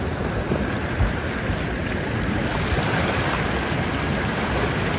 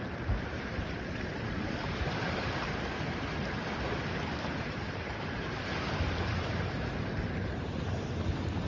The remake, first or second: second